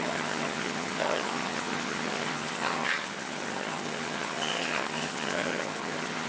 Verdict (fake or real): fake